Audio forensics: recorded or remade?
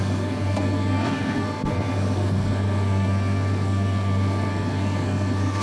remade